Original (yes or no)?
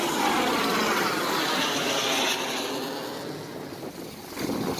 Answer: yes